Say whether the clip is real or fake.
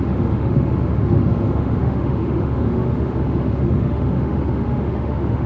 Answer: fake